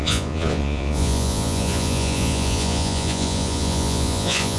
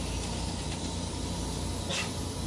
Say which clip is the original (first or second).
second